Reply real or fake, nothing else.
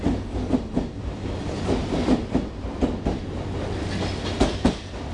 real